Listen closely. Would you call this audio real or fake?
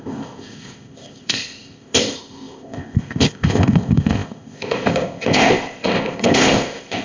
fake